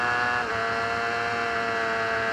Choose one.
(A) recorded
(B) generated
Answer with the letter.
A